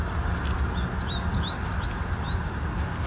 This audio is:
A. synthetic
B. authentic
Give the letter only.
B